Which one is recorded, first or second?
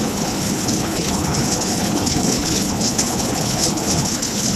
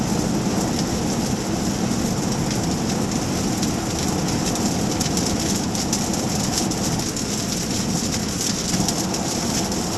second